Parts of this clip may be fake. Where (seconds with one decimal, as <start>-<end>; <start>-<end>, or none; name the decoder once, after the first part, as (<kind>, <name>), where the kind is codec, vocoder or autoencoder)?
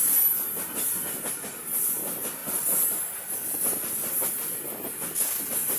none